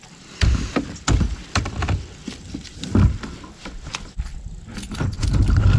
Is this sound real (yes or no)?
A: yes